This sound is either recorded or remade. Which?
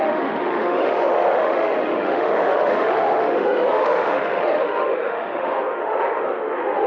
remade